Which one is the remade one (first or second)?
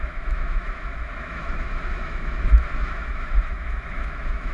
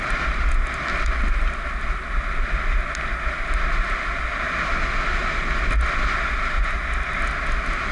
first